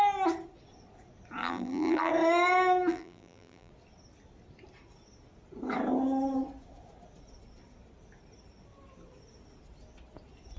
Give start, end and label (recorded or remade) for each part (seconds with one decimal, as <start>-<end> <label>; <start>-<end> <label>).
0.0-1.4 recorded; 1.4-2.1 remade; 2.1-2.9 recorded; 2.9-3.7 remade; 3.7-10.6 recorded